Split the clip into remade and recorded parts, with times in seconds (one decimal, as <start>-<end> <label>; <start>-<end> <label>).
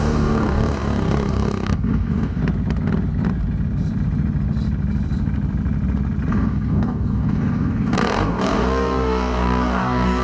0.0-2.4 remade; 2.4-6.3 recorded; 6.3-10.2 remade